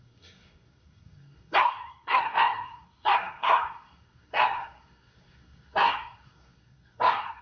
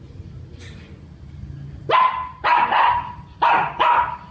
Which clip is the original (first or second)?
second